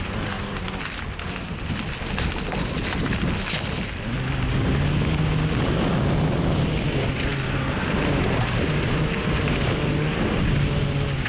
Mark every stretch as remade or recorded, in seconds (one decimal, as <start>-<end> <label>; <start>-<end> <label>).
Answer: 0.0-11.3 recorded